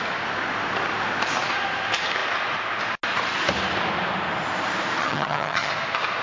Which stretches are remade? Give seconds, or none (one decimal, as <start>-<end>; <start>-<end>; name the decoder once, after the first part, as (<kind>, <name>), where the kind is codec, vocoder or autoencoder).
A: 5.0-5.7 (vocoder, HiFi-GAN)